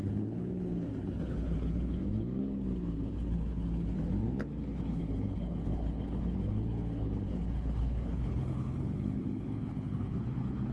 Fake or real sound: fake